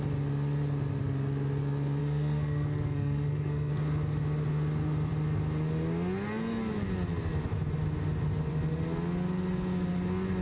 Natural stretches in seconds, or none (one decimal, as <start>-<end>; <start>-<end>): 0.0-2.0; 3.7-10.4